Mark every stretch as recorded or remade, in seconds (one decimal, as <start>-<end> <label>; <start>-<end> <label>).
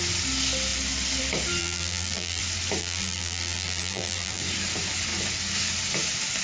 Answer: 0.0-1.6 recorded; 1.6-2.4 remade; 2.4-2.8 recorded; 2.8-4.4 remade; 4.4-6.4 recorded